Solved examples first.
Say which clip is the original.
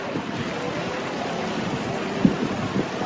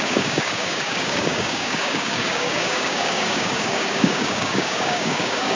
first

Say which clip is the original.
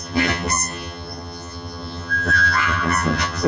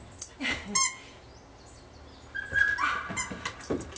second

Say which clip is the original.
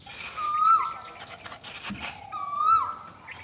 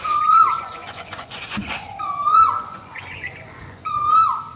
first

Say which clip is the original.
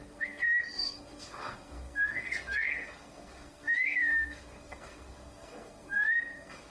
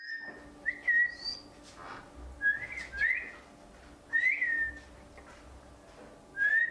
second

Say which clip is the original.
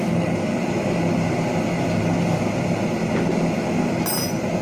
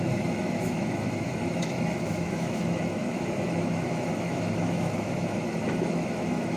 first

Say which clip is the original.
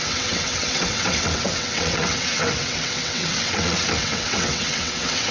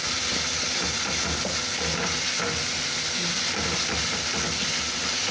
second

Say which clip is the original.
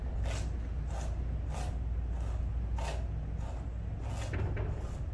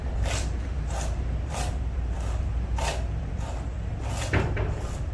first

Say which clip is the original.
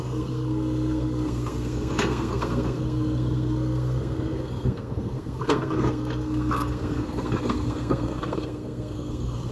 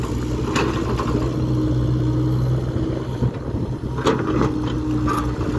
second